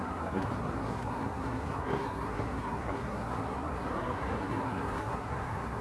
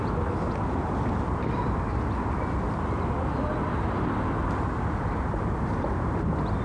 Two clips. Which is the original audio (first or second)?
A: second